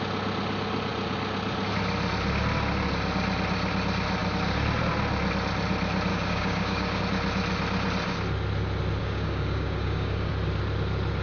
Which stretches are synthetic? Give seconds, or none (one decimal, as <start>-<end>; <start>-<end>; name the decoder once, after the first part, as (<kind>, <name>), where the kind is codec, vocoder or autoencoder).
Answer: 6.1-7.0 (codec, DAC); 9.0-10.3